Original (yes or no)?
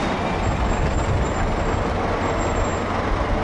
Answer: yes